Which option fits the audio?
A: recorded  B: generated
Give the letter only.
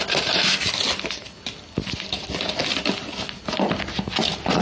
A